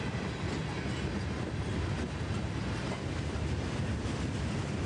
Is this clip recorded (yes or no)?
yes